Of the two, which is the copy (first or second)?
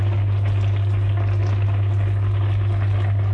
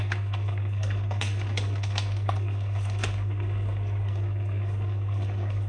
second